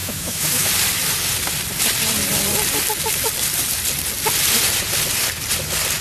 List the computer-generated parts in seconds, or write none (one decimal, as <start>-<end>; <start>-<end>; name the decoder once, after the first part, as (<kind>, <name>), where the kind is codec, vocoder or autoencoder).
0.0-0.7 (autoencoder, DAC-VAE)